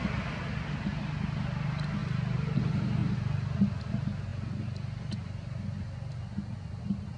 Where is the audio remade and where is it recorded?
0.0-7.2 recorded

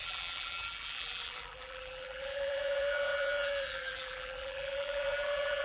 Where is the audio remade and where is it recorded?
0.0-5.6 remade